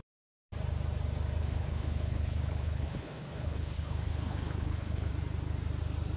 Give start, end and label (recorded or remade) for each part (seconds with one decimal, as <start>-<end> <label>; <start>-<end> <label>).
0.0-1.4 recorded; 1.4-5.1 remade; 5.1-6.2 recorded